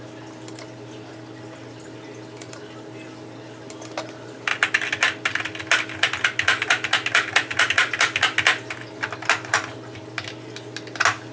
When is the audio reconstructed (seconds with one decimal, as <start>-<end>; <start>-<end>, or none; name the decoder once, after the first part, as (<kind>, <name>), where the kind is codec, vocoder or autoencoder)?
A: none